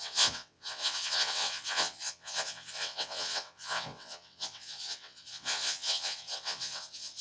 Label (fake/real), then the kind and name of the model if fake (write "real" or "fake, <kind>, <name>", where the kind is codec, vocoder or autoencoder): fake, vocoder, WaveNeXt